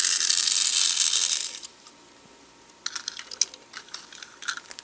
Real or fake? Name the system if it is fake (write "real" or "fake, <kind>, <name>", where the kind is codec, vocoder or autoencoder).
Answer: real